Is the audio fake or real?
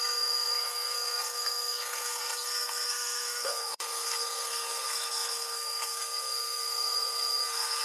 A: fake